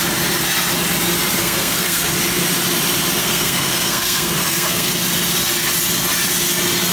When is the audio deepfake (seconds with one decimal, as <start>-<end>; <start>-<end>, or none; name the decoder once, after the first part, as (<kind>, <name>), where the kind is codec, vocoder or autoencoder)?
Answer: 1.4-2.1 (codec, SNAC); 3.2-4.9